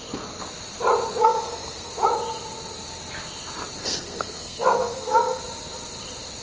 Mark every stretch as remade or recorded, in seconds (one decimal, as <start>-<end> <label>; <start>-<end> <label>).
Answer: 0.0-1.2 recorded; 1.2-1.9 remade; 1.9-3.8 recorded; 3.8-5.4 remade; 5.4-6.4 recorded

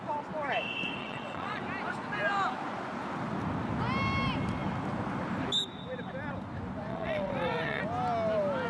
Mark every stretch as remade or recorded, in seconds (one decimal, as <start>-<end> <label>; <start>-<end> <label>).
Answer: 0.0-1.0 recorded; 1.0-1.6 remade; 1.6-6.9 recorded; 6.9-7.8 remade; 7.8-8.7 recorded

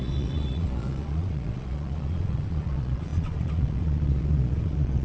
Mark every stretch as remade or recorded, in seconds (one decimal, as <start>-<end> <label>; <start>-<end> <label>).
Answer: 0.0-5.0 remade

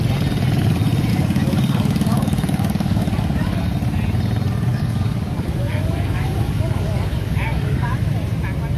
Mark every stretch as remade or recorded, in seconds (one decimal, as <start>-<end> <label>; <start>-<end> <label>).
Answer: 0.0-1.1 recorded; 1.1-3.6 remade; 3.6-4.7 recorded; 4.7-8.1 remade; 8.1-8.8 recorded

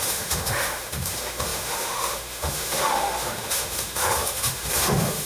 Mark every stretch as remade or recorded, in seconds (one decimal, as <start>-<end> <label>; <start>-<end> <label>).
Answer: 0.0-5.3 remade